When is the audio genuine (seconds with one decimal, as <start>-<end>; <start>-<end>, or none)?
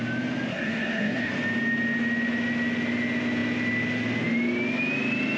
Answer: 0.0-0.5; 1.3-5.4